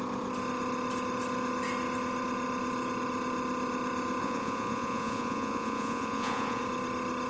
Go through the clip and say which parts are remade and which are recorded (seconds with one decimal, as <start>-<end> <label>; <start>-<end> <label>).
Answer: 0.0-4.2 recorded; 4.2-6.6 remade; 6.6-7.3 recorded